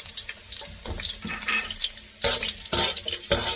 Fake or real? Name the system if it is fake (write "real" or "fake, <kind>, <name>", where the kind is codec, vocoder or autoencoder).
real